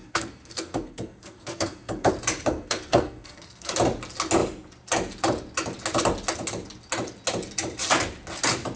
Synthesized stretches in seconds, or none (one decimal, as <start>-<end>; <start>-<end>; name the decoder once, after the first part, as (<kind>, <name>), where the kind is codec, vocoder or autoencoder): 0.0-2.1 (codec, SNAC); 2.5-3.7